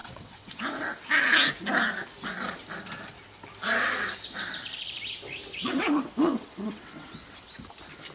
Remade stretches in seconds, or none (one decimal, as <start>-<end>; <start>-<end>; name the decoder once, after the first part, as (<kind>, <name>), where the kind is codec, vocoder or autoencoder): 0.0-0.6 (vocoder, WaveNeXt); 5.6-7.5